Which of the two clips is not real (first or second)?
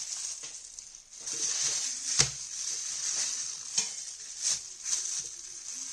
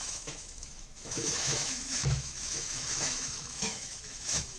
second